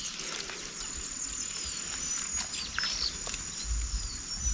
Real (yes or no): yes